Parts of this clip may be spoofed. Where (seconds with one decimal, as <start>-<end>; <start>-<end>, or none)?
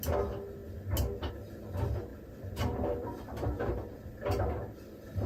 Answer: none